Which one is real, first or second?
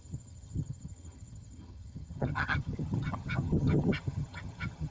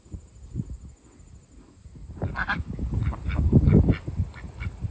second